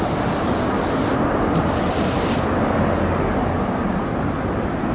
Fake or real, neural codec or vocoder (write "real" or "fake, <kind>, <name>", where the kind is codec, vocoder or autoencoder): real